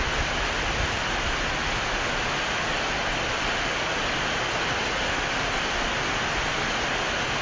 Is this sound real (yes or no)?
yes